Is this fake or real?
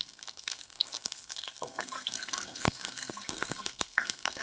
fake